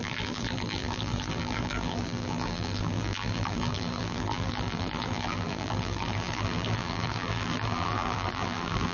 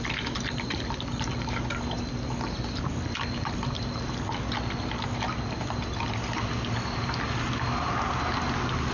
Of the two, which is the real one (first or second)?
second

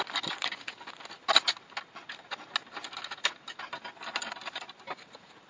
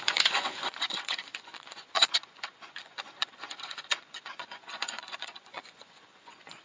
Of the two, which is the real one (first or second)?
first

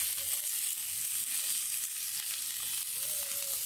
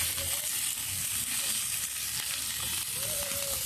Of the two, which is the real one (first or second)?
first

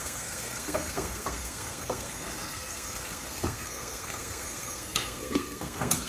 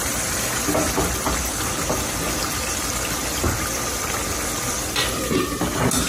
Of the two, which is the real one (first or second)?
second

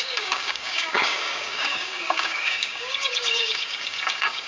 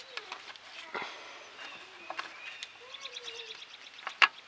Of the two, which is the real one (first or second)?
second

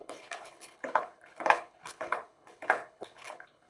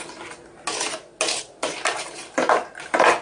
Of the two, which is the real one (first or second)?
second